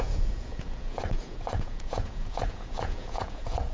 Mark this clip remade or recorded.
remade